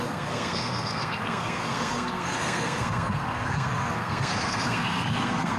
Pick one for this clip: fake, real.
fake